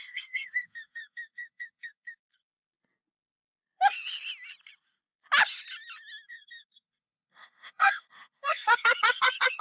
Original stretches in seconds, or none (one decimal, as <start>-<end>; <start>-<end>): 2.5-6.3